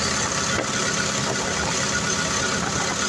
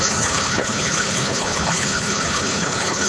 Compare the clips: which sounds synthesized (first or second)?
second